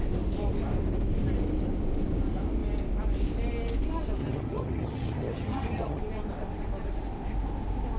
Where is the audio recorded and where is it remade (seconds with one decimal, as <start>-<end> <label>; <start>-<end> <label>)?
0.0-4.2 recorded; 4.2-6.0 remade; 6.0-8.0 recorded